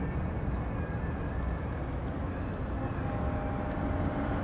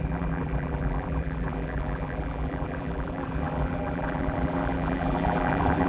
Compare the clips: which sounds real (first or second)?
first